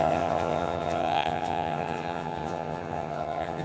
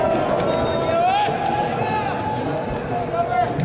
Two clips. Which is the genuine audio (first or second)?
second